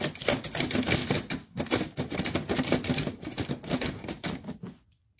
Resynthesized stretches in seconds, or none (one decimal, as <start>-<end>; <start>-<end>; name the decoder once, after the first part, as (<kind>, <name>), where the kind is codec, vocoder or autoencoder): none

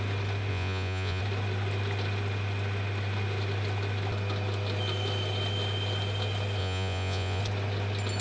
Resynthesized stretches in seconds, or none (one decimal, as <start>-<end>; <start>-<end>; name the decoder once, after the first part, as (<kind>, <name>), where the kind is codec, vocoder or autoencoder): 0.5-1.2 (vocoder, Vocos); 6.6-7.4

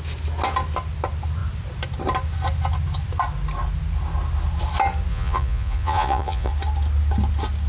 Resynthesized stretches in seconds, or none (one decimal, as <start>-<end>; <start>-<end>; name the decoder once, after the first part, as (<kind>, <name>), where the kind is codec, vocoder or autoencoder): 5.1-6.5 (vocoder, Vocos)

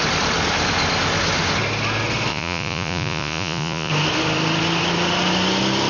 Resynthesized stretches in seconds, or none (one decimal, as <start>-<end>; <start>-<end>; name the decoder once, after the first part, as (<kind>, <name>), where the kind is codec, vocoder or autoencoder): 2.3-3.9 (vocoder, Vocos)

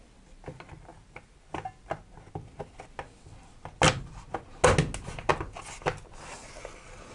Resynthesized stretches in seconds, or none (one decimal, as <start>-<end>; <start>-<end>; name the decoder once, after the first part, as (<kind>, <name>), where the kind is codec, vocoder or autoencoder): none